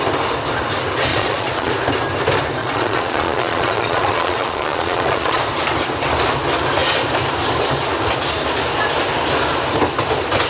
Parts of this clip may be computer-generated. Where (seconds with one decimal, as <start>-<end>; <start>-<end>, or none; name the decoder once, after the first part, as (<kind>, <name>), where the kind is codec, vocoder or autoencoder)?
1.1-1.7 (vocoder, Vocos); 2.6-5.4